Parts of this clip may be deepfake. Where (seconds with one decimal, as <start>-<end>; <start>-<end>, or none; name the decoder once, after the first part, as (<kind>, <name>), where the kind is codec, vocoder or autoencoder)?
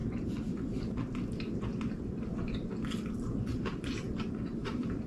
3.5-4.0 (vocoder, BigVGAN v2); 4.6-5.1